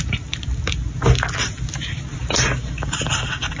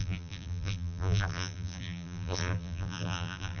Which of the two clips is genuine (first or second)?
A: first